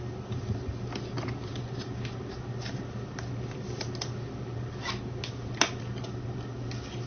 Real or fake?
real